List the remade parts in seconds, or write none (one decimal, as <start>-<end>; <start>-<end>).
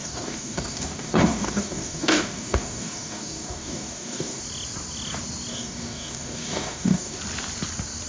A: 0.0-4.4; 5.5-7.2